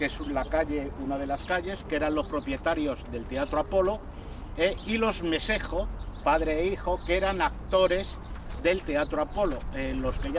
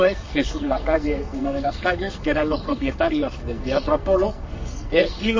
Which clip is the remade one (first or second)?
second